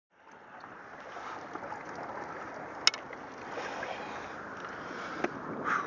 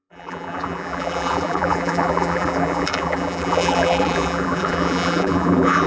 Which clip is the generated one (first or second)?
second